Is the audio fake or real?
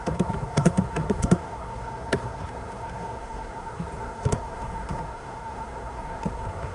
fake